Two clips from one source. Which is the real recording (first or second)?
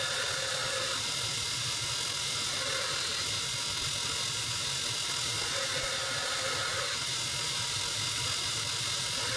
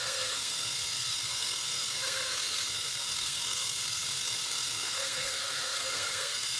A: first